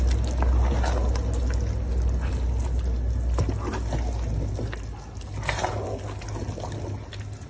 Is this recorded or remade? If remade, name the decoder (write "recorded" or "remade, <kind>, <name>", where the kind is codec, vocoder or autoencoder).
recorded